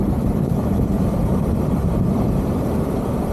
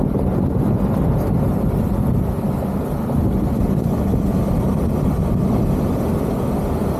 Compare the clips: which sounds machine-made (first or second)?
first